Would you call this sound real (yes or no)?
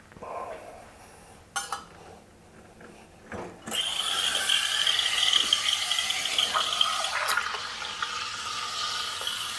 yes